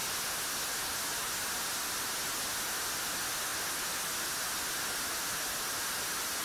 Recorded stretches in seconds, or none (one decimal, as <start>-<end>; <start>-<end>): 0.0-6.4